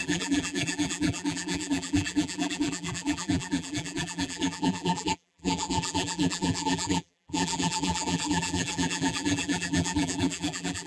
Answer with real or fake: fake